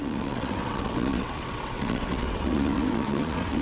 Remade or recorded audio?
remade